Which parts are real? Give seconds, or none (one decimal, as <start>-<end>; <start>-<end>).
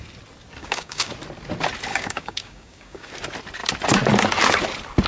0.0-0.6; 1.1-1.9; 3.1-5.1